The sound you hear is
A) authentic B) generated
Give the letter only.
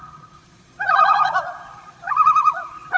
B